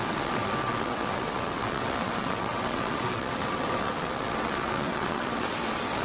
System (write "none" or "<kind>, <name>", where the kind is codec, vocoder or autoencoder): vocoder, WaveNeXt